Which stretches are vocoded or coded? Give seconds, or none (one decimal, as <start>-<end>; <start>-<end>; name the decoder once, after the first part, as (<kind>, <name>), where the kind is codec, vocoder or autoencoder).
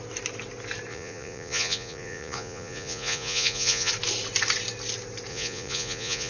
0.9-3.9 (vocoder, Vocos); 5.3-6.3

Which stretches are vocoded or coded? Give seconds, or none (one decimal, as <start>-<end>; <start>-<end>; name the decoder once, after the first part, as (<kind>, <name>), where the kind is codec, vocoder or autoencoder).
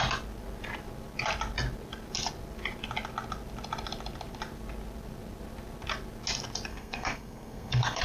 6.7-8.0 (codec, SNAC)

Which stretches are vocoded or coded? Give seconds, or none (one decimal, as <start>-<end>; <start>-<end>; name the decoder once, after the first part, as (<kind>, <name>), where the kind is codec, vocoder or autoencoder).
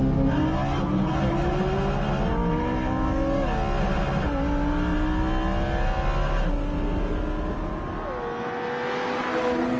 none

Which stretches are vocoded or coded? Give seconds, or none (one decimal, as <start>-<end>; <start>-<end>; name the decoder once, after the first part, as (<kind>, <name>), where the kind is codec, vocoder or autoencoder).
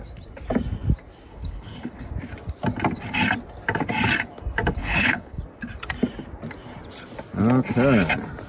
1.3-2.1 (codec, HILCodec); 4.8-5.4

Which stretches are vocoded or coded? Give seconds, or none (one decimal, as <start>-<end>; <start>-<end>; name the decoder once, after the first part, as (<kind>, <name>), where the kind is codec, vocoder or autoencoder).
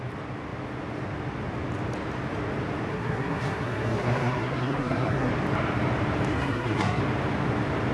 2.9-5.3 (codec, SNAC); 6.3-7.0